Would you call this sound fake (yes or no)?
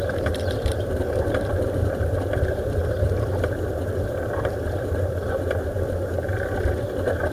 yes